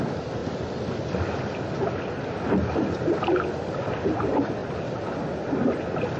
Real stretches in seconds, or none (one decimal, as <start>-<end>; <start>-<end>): 0.0-6.2